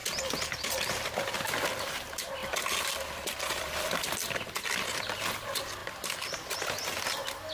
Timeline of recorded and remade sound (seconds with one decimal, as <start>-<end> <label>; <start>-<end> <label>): 0.0-1.5 remade; 1.5-2.4 recorded; 2.4-3.9 remade; 3.9-7.5 recorded